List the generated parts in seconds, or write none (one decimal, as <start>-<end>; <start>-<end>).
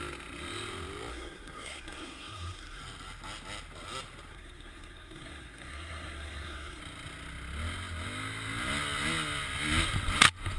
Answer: 1.1-2.8; 4.3-6.8